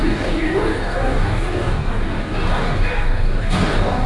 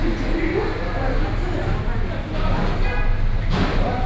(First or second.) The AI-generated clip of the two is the first